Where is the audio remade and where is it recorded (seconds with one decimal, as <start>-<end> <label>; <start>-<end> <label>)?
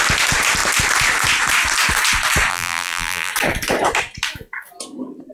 0.0-2.5 recorded; 2.5-3.3 remade; 3.3-5.3 recorded